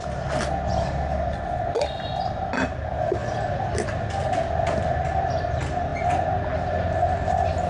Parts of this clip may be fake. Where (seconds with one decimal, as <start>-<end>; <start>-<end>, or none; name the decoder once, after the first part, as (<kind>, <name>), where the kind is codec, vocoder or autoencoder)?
none